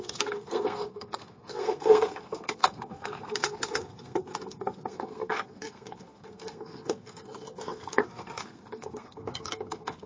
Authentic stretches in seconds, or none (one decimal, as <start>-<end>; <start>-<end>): none